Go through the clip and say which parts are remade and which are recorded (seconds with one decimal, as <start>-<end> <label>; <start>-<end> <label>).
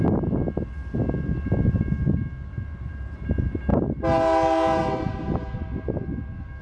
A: 0.0-6.6 recorded